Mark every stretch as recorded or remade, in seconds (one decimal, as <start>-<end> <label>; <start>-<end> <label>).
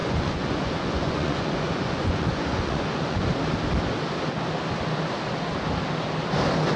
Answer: 0.0-3.3 remade; 3.3-6.8 recorded